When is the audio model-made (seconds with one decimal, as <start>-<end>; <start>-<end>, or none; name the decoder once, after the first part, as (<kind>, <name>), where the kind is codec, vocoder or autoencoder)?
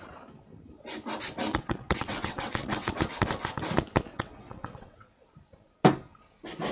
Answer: 1.5-2.9 (vocoder, WaveNeXt); 4.1-5.3